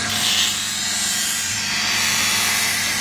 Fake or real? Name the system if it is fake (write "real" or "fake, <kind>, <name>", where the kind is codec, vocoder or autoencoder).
fake, vocoder, BigVGAN v2